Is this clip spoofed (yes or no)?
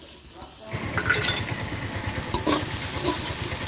no